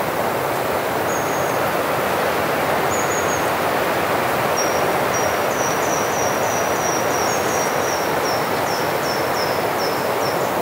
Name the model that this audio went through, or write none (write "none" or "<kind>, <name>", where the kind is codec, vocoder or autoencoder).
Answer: none